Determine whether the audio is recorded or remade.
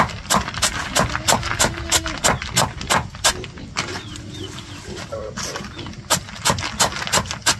recorded